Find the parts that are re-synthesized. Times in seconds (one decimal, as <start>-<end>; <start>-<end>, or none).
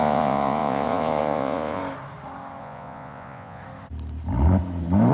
0.0-1.8; 2.6-3.6